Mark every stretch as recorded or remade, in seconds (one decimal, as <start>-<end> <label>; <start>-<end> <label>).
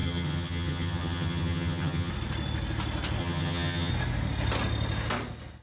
0.0-2.1 remade; 2.1-3.2 recorded; 3.2-3.9 remade; 3.9-5.6 recorded